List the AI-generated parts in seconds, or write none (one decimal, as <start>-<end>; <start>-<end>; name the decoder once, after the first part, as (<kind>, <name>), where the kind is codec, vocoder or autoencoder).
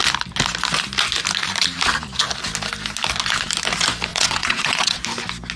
4.1-5.0 (vocoder, WaveNeXt)